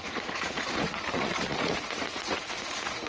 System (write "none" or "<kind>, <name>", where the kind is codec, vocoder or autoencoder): vocoder, Vocos